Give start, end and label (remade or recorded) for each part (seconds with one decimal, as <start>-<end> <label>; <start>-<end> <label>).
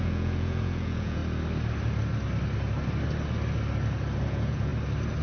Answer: 0.0-1.2 remade; 1.2-4.3 recorded; 4.3-4.7 remade; 4.7-5.2 recorded